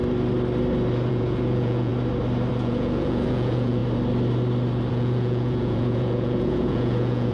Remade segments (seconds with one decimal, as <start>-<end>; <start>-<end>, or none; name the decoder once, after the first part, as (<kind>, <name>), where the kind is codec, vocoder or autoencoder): 1.1-1.9 (vocoder, Vocos); 2.5-3.8; 4.9-7.3